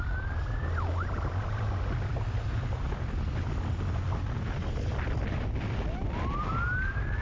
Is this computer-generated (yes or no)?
no